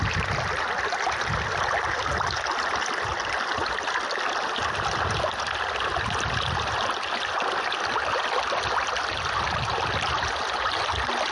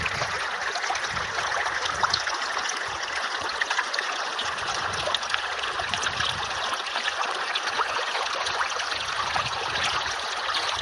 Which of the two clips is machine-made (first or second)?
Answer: second